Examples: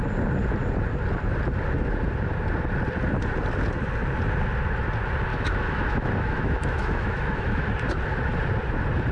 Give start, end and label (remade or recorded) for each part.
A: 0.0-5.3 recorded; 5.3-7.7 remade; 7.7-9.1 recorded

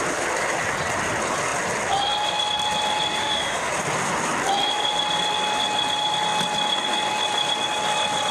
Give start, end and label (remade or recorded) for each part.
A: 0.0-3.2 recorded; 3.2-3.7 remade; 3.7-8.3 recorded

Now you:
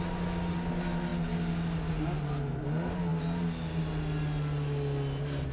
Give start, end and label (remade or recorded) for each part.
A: 0.0-5.5 recorded

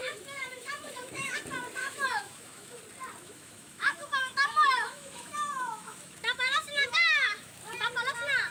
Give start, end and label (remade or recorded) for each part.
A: 0.0-1.4 remade; 1.4-1.8 recorded; 1.8-2.8 remade; 2.8-3.2 recorded; 3.2-7.6 remade; 7.6-8.5 recorded